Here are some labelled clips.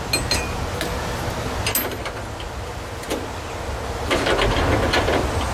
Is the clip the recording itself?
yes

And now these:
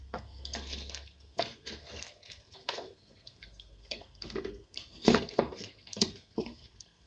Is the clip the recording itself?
no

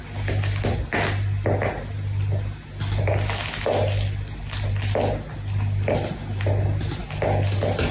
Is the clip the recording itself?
yes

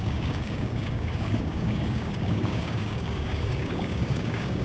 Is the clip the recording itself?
no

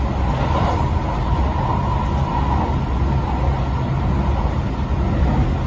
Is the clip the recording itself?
yes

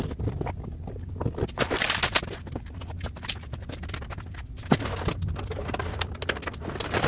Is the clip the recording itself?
yes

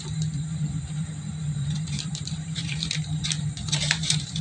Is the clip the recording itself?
no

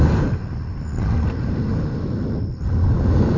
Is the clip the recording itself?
yes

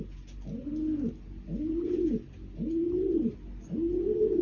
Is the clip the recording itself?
yes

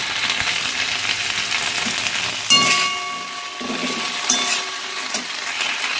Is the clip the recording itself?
yes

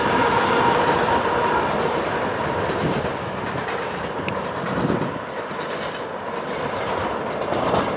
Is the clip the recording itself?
no